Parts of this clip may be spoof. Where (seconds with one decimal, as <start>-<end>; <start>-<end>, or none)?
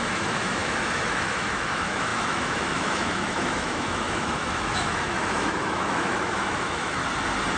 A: 0.0-7.0